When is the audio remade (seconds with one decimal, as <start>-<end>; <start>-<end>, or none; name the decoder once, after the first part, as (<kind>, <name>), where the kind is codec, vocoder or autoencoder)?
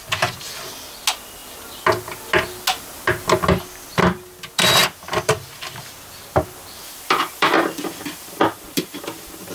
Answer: 4.8-9.5 (vocoder, BigVGAN v2)